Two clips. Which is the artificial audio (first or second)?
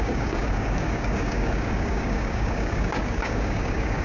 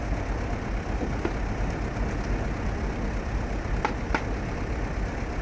first